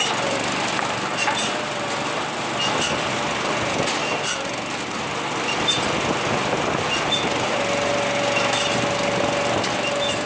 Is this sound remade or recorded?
recorded